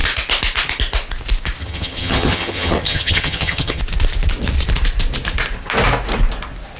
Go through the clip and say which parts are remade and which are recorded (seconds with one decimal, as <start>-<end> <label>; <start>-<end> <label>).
0.0-1.6 recorded; 1.6-3.8 remade; 3.8-6.8 recorded